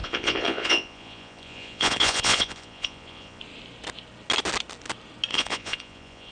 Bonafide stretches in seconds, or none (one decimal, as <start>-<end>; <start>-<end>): 3.4-5.3

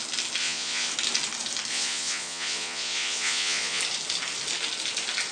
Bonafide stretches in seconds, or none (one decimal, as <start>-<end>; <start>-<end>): 0.0-0.4; 0.9-1.7; 3.8-5.3

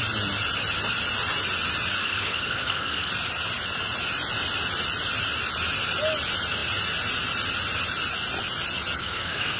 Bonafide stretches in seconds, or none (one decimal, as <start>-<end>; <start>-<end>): 0.0-2.0; 3.1-9.0

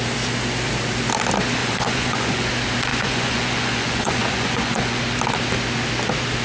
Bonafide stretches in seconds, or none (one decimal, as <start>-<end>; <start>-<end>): 0.0-1.6; 2.5-2.9; 5.0-6.4

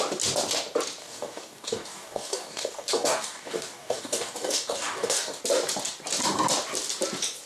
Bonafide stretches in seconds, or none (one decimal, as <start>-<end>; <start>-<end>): 0.0-1.0; 5.4-7.5

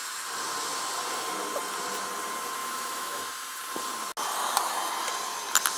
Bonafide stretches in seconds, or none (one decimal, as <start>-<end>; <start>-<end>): 0.0-2.6; 3.2-5.8

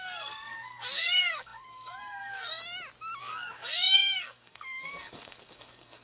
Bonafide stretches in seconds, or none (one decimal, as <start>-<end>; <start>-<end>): 2.6-3.2